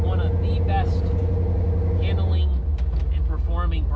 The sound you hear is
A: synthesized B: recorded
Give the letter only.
B